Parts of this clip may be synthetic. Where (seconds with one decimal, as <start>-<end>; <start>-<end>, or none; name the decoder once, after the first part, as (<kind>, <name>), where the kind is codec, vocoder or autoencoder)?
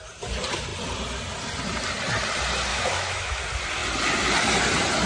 2.7-3.4 (autoencoder, DAC-VAE)